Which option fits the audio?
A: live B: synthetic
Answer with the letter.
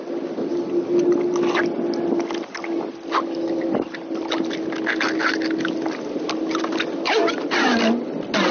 A